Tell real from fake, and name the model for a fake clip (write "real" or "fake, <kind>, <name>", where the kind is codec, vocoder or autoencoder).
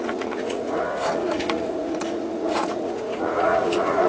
fake, vocoder, Vocos